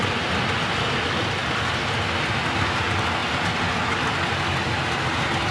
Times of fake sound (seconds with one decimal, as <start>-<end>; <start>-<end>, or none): none

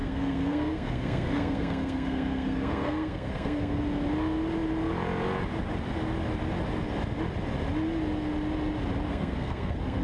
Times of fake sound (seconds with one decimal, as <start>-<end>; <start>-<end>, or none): 0.0-3.8; 9.1-10.0

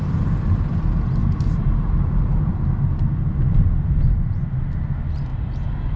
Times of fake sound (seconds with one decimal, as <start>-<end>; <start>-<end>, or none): 1.2-2.6; 5.3-6.0

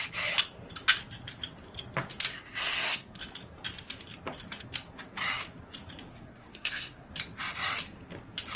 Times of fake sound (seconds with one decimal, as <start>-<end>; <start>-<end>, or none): 2.3-3.2; 6.1-7.1

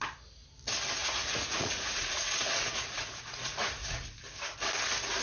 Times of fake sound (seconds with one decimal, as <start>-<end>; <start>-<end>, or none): 1.0-4.1

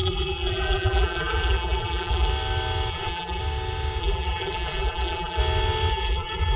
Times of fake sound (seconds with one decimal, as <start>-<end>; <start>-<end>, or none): 0.0-2.3; 2.9-3.4; 4.0-5.4; 5.9-6.6

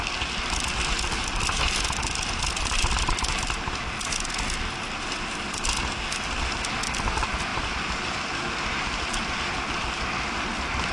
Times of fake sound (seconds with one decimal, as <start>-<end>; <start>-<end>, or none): none

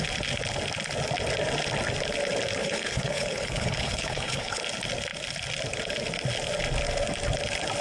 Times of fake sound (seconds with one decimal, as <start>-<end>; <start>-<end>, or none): 2.6-4.6